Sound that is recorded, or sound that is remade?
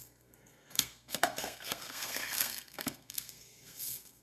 remade